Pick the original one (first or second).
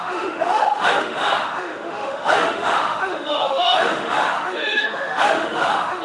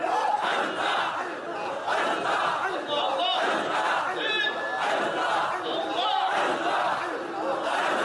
second